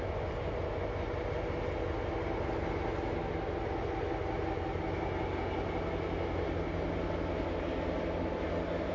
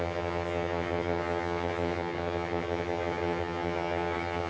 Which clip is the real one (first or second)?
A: first